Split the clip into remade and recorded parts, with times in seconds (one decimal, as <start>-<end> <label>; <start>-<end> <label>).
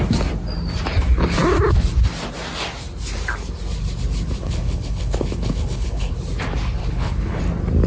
0.0-4.4 recorded; 4.4-6.1 remade; 6.1-6.8 recorded; 6.8-7.4 remade; 7.4-7.9 recorded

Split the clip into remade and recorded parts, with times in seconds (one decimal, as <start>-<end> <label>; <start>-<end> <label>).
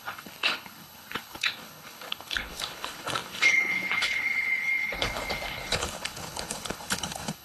0.0-7.4 remade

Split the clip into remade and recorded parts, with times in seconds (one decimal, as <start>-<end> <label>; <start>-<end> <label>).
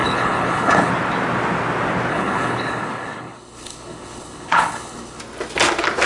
0.0-0.9 remade; 0.9-2.1 recorded; 2.1-5.2 remade; 5.2-6.1 recorded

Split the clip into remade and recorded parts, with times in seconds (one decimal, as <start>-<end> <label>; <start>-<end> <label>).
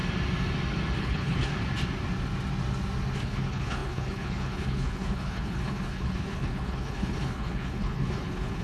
0.0-1.0 recorded; 1.0-1.5 remade; 1.5-3.2 recorded; 3.2-8.6 remade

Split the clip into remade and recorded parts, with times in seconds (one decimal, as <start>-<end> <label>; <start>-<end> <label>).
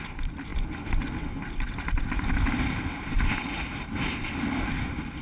0.0-5.2 recorded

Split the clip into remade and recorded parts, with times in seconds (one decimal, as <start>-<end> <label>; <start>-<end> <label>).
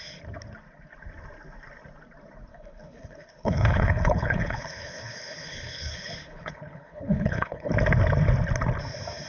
0.0-2.5 recorded; 2.5-7.7 remade; 7.7-9.3 recorded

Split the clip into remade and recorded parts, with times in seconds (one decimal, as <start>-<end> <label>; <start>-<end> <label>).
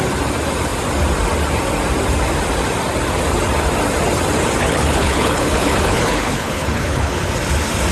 0.0-4.6 recorded; 4.6-7.3 remade; 7.3-7.9 recorded